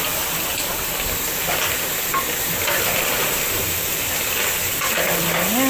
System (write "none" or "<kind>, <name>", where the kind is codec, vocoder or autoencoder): none